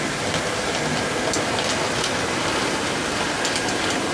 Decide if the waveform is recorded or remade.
recorded